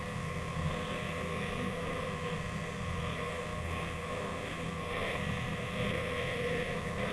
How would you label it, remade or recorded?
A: remade